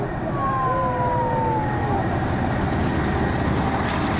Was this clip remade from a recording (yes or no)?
no